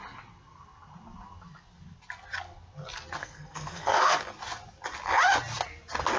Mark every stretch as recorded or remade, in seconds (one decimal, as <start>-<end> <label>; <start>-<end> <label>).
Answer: 0.0-3.2 recorded; 3.2-4.2 remade; 4.2-6.2 recorded